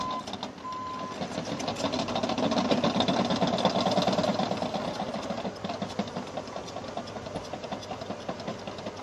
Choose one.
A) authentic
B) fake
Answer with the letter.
A